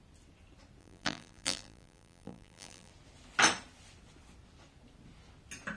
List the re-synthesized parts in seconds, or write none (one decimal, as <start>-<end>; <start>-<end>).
0.8-2.9